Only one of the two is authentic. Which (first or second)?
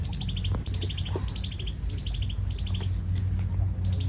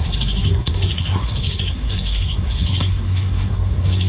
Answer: first